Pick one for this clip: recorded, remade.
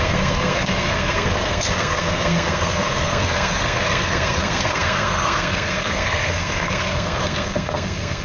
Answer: remade